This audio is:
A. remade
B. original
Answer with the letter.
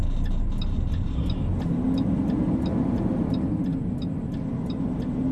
B